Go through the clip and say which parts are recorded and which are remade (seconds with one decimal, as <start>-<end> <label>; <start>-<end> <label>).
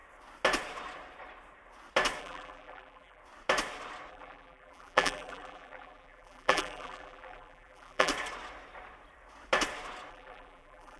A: 0.0-2.2 recorded; 2.2-3.2 remade; 3.2-4.1 recorded; 4.1-8.1 remade; 8.1-10.1 recorded; 10.1-11.0 remade